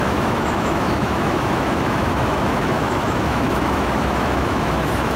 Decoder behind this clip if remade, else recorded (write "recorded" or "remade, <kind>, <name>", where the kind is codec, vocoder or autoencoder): remade, autoencoder, DAC-VAE